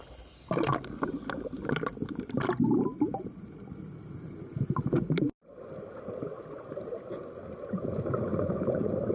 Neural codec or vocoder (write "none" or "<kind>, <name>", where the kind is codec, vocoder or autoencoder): none